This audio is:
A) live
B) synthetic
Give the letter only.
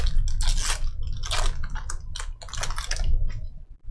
A